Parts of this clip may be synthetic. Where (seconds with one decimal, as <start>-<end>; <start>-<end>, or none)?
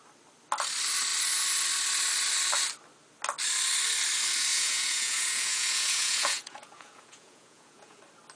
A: 4.5-8.0